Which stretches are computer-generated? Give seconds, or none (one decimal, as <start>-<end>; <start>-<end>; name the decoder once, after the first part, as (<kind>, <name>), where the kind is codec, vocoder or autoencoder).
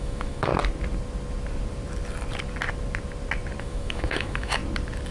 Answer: 0.0-0.5 (autoencoder, DAC-VAE); 3.6-4.6